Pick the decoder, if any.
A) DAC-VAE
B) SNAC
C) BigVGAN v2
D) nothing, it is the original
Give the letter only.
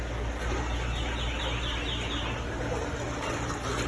D